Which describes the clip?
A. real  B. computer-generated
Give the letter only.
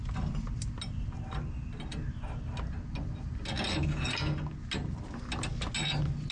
A